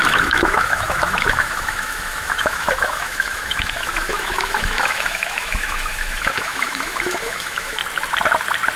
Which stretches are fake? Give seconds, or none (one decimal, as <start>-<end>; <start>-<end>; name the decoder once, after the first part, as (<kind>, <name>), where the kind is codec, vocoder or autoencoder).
0.0-7.8 (autoencoder, DAC-VAE)